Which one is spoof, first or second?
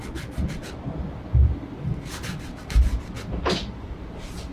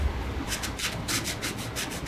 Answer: first